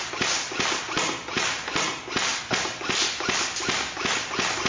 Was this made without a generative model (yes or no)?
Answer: yes